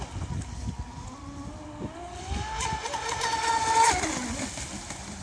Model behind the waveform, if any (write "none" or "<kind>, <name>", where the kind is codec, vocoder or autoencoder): none